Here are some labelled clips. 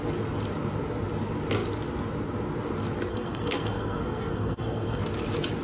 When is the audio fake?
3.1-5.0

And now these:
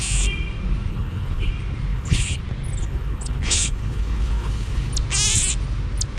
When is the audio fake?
0.9-1.5; 1.9-2.4; 2.8-4.9